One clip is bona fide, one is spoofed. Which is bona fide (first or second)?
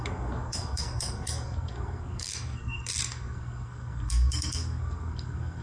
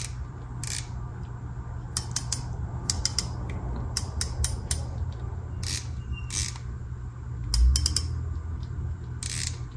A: second